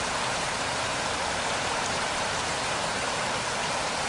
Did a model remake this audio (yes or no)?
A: yes